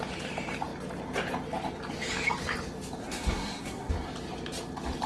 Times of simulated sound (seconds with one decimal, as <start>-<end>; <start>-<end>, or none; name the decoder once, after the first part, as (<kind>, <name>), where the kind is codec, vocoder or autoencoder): 3.0-3.9 (codec, SNAC)